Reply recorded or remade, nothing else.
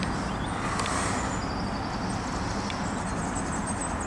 recorded